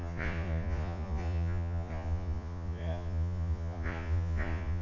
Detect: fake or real fake